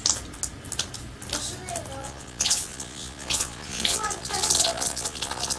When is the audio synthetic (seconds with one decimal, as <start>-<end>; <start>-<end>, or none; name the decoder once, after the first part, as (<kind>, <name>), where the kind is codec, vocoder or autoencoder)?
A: 2.0-5.6 (vocoder, Vocos)